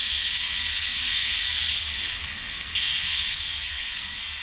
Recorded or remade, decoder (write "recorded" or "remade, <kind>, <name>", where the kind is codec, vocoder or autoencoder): remade, codec, SNAC